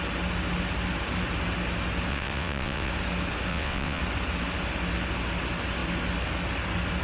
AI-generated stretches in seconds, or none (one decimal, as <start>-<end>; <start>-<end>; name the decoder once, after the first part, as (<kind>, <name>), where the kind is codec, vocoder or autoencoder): 2.1-2.9 (vocoder, WaveNeXt); 3.5-4.0